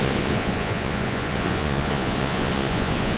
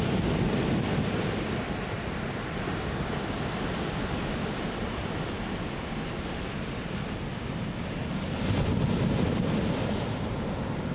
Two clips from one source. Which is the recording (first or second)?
second